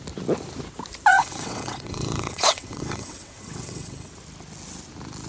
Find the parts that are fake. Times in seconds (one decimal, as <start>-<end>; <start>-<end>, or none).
1.1-4.1